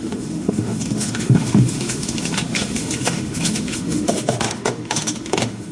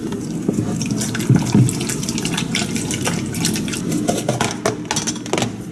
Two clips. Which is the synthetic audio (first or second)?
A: first